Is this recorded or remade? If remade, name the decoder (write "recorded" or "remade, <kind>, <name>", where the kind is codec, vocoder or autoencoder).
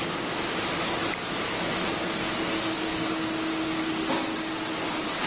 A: recorded